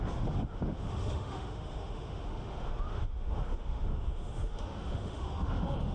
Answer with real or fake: fake